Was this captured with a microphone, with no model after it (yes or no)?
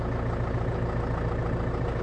yes